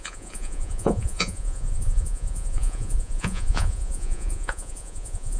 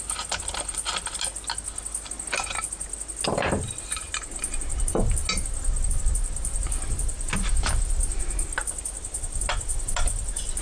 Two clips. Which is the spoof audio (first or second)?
first